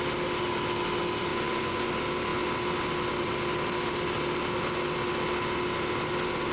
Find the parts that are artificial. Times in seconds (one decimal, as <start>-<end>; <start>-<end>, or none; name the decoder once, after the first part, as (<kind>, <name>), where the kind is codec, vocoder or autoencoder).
1.3-1.9 (vocoder, Vocos)